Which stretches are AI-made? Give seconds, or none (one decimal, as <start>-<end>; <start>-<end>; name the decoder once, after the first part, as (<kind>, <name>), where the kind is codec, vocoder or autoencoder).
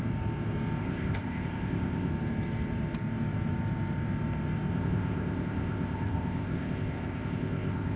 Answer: 0.8-2.1 (codec, ZipCodec); 4.7-8.0